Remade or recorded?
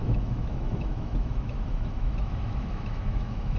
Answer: remade